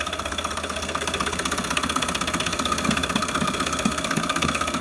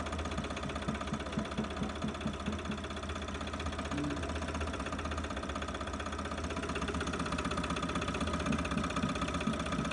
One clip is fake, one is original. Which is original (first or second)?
second